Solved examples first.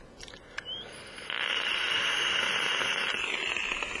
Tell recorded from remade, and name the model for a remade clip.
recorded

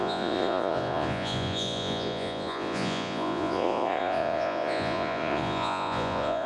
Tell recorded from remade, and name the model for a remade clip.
remade, vocoder, Vocos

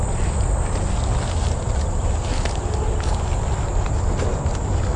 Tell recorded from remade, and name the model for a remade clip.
recorded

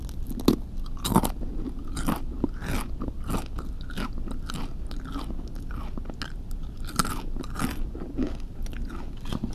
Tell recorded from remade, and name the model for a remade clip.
recorded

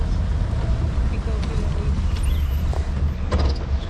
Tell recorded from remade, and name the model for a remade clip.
recorded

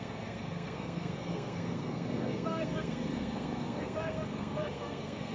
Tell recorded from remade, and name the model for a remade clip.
remade, codec, SNAC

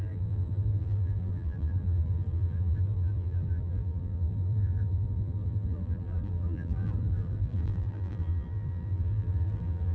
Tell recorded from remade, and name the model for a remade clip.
remade, vocoder, BigVGAN v2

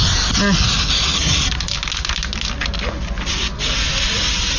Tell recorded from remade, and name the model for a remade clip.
recorded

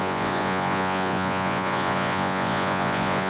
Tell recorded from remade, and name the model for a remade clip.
remade, vocoder, Vocos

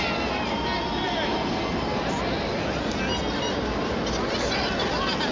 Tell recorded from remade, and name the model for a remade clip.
recorded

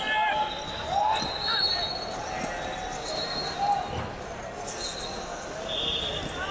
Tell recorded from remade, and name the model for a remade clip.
recorded